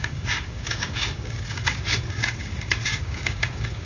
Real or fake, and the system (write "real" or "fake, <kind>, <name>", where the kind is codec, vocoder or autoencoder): fake, codec, DAC